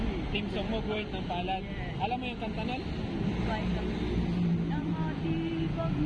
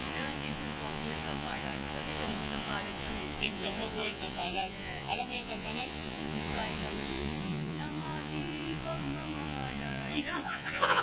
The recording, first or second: first